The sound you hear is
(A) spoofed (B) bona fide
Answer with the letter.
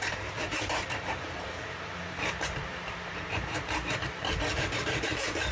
A